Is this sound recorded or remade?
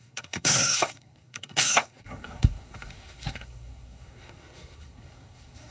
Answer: remade